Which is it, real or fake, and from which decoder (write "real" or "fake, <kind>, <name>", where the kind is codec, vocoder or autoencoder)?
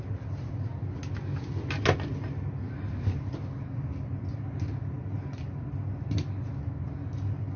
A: real